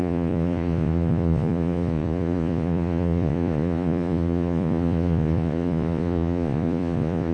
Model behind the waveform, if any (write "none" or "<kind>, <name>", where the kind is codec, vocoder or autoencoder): vocoder, Vocos